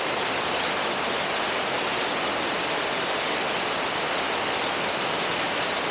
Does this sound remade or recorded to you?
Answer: recorded